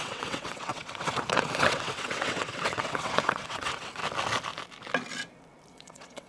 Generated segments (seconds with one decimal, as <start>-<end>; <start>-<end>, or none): 0.0-4.0; 5.7-6.3